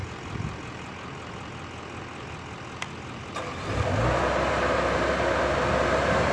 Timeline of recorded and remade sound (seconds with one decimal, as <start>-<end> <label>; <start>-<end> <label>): 0.0-6.3 recorded